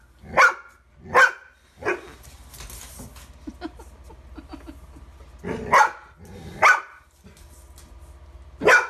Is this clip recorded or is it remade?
recorded